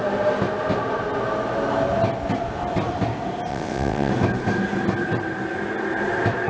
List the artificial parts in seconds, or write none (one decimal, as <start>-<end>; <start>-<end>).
3.5-4.1